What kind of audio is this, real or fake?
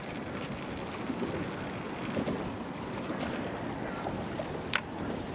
real